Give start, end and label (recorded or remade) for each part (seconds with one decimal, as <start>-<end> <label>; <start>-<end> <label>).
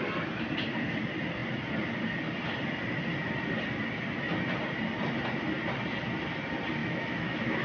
0.0-6.8 recorded; 6.8-7.6 remade